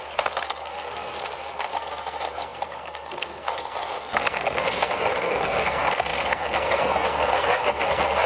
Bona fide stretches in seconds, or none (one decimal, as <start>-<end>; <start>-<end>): none